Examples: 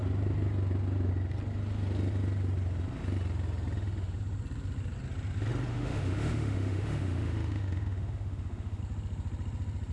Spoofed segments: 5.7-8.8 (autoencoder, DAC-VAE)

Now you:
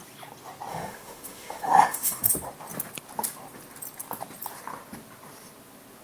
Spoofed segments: 0.7-2.3 (autoencoder, DAC-VAE)

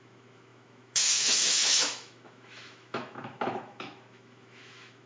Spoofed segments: 0.0-5.1 (autoencoder, DAC-VAE)

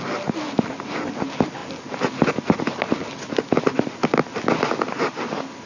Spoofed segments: none